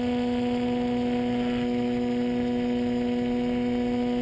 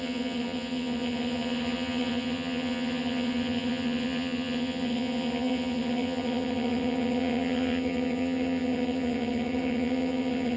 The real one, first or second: first